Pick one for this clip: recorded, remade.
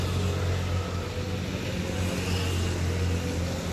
recorded